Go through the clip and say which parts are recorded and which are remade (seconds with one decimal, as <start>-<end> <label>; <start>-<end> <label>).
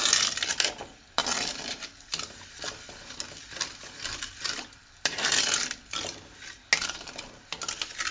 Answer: 0.0-5.3 remade; 5.3-6.8 recorded; 6.8-8.1 remade